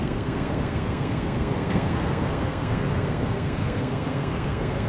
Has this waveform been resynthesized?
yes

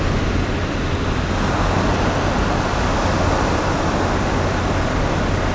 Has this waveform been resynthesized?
no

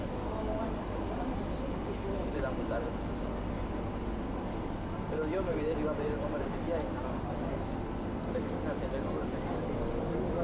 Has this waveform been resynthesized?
no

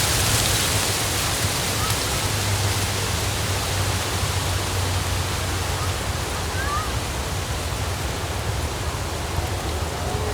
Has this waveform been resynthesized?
no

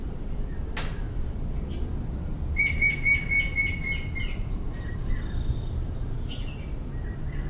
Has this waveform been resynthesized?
no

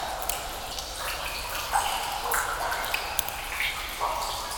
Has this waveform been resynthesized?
no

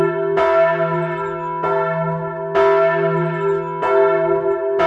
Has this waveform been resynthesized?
no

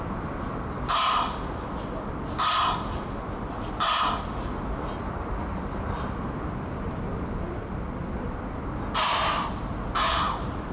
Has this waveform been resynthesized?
no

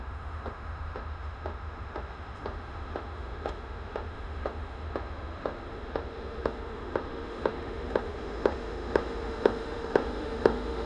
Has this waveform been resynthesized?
yes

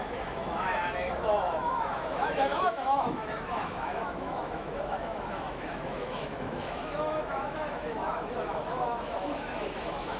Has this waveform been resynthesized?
yes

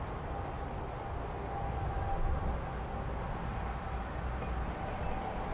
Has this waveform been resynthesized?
no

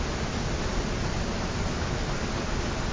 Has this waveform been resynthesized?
no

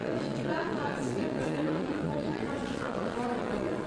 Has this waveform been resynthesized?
yes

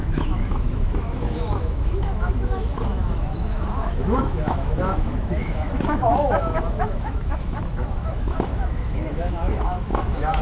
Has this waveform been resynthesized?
yes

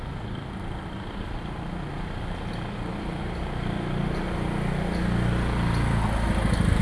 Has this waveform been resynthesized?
no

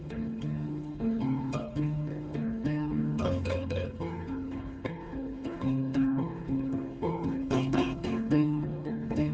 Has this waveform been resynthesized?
yes